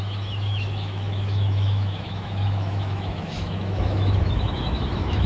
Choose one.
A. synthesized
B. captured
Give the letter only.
A